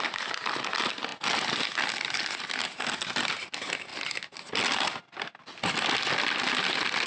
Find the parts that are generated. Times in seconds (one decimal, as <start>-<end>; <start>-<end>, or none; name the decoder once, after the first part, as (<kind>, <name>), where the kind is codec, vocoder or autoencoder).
none